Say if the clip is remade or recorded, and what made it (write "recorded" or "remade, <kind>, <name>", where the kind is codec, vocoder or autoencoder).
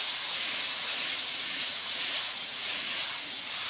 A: remade, vocoder, Vocos